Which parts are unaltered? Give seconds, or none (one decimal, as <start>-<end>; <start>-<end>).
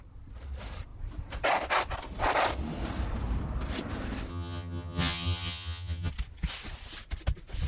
0.0-4.3; 6.1-7.7